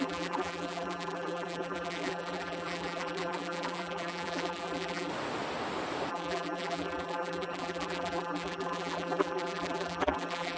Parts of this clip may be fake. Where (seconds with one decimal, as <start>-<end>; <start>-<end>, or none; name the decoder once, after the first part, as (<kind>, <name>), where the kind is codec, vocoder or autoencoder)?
0.0-5.1 (vocoder, BigVGAN v2); 6.1-10.6